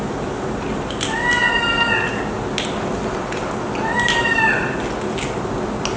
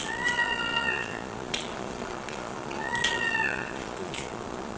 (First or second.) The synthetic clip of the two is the second